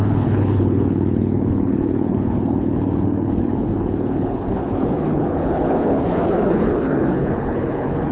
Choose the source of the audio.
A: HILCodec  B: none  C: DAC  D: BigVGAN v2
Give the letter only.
A